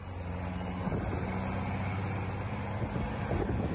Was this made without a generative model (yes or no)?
yes